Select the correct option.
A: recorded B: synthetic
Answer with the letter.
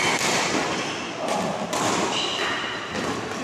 A